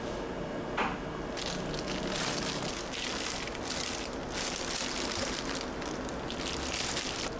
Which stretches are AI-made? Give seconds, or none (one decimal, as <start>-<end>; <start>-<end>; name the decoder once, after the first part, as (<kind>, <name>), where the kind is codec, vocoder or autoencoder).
none